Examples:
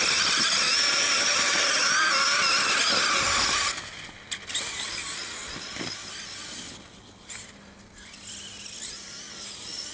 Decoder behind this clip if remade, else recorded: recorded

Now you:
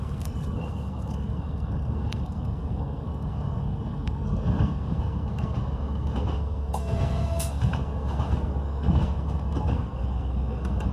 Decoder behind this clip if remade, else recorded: remade, codec, SNAC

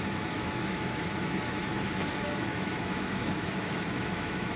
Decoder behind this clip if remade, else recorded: remade, autoencoder, DAC-VAE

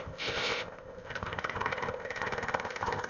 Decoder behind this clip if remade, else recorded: remade, codec, ZipCodec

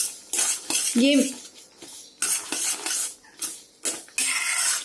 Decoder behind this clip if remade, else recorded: recorded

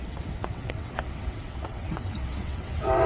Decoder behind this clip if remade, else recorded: remade, vocoder, WaveNeXt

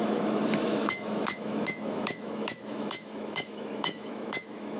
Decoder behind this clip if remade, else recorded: remade, autoencoder, DAC-VAE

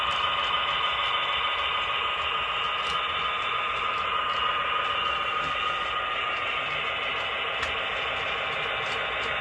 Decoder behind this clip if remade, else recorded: recorded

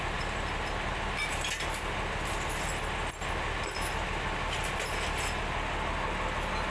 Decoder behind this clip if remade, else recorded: recorded